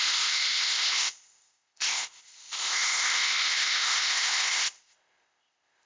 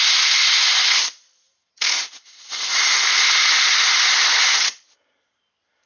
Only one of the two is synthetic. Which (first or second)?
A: first